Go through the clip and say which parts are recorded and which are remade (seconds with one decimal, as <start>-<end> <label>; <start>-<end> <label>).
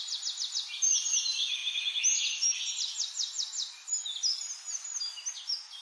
0.0-5.8 recorded